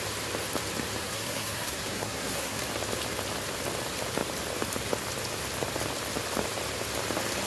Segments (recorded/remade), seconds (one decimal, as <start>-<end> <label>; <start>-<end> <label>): 0.0-1.0 recorded; 1.0-2.6 remade; 2.6-7.5 recorded